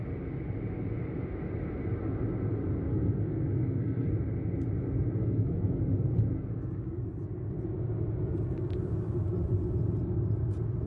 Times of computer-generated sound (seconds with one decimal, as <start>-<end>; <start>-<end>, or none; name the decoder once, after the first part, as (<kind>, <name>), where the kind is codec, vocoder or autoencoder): 2.9-4.1 (codec, SNAC); 5.2-5.8